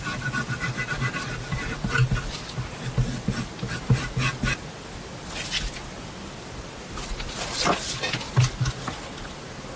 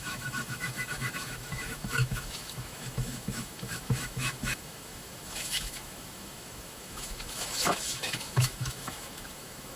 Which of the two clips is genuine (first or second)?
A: first